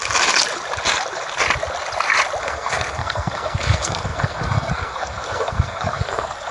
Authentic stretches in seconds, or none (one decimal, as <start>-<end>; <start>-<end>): 0.0-2.4